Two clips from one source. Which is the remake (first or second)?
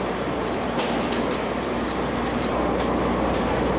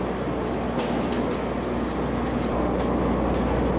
first